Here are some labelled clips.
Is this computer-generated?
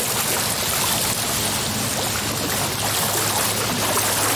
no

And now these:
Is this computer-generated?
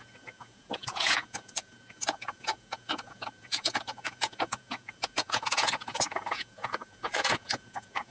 yes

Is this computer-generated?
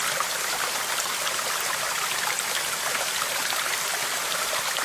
no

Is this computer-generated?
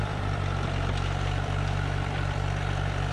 yes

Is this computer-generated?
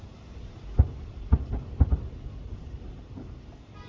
no